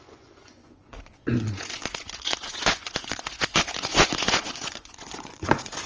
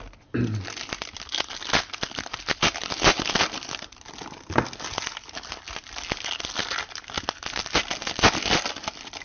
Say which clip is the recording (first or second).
second